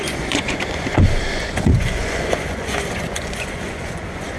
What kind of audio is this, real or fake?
fake